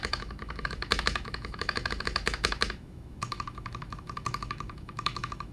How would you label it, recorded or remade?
remade